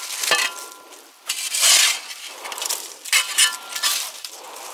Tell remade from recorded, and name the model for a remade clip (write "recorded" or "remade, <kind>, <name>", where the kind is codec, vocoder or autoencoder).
recorded